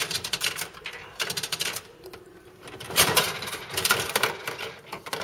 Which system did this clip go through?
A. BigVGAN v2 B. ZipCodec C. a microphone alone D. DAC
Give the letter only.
A